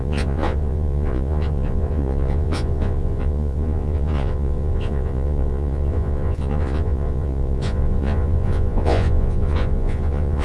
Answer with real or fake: fake